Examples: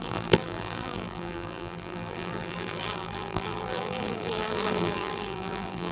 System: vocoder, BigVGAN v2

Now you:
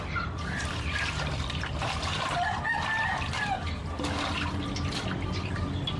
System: vocoder, BigVGAN v2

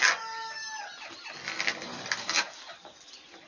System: none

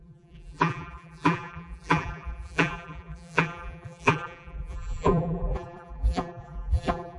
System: vocoder, BigVGAN v2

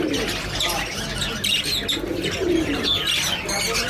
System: none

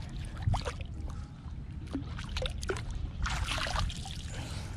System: none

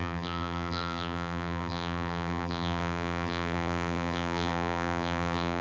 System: vocoder, BigVGAN v2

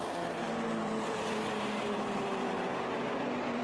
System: vocoder, BigVGAN v2